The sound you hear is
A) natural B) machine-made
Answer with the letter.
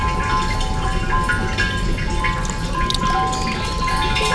A